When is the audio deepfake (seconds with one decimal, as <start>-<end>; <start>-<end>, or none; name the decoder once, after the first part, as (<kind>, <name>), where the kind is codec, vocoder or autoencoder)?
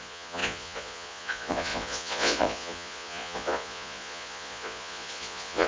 0.0-5.7 (vocoder, Vocos)